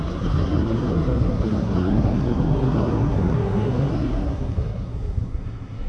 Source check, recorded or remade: remade